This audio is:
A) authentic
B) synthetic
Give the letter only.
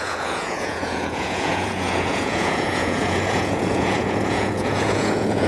B